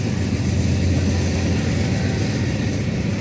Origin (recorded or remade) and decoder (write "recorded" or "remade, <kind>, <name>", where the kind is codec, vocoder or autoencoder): recorded